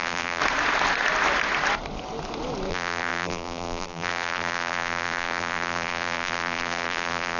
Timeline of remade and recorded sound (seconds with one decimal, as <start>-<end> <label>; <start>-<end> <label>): 0.0-0.4 remade; 0.4-2.7 recorded; 2.7-7.4 remade